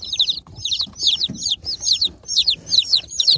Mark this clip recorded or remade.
remade